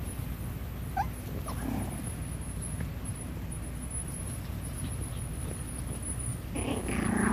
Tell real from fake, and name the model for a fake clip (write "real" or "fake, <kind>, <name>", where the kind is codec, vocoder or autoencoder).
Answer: real